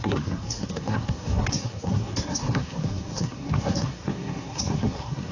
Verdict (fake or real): fake